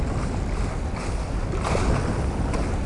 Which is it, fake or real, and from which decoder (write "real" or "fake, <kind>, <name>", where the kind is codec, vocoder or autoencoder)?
real